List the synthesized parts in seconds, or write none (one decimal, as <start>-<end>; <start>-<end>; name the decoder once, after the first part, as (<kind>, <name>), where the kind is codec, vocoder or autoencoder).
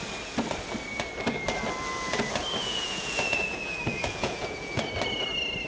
2.6-4.8 (vocoder, Vocos)